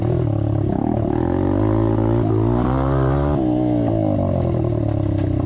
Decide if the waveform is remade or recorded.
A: recorded